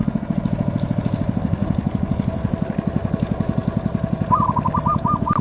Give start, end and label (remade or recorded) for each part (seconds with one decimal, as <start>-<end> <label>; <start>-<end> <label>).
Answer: 0.0-5.4 recorded